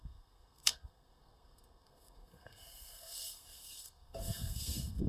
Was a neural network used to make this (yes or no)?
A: yes